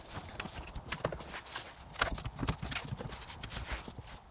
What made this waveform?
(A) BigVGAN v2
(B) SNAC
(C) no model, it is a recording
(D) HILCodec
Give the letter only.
C